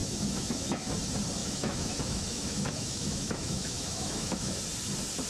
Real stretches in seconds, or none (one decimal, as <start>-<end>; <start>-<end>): 0.9-1.4; 4.6-5.3